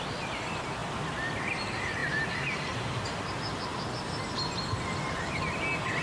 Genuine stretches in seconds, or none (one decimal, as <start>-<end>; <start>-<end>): 0.0-2.0; 3.1-6.0